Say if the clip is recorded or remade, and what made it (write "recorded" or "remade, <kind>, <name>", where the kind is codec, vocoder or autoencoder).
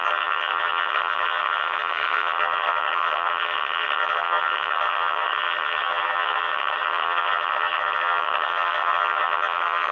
remade, vocoder, HiFi-GAN